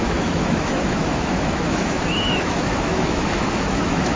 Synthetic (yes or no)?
yes